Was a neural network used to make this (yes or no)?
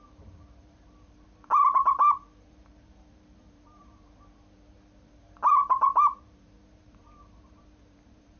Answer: yes